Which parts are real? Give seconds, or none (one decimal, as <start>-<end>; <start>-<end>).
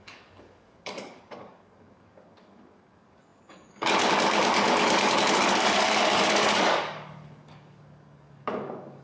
none